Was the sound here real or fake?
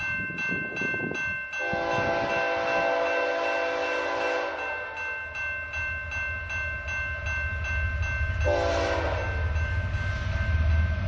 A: real